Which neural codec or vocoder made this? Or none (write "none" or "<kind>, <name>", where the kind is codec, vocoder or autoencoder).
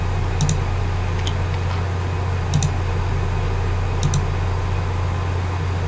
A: none